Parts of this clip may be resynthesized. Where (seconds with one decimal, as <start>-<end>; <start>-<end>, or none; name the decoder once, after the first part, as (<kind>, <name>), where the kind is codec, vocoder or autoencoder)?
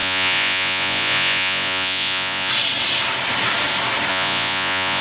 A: 0.0-2.5 (vocoder, Vocos); 4.1-5.0